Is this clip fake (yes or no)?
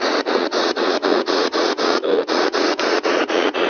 yes